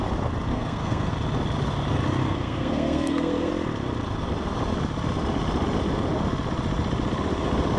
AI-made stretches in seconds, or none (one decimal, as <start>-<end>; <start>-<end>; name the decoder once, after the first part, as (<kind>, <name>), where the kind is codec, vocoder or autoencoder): 0.5-1.1 (codec, SNAC); 2.2-3.5